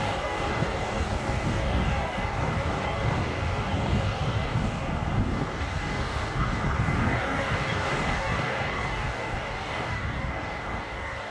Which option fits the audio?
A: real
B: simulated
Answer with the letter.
B